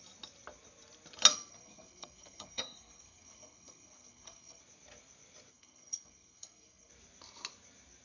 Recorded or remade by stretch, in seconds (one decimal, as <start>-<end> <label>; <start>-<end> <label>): 0.0-1.3 recorded; 1.3-4.6 remade; 4.6-5.5 recorded; 5.5-6.9 remade; 6.9-8.0 recorded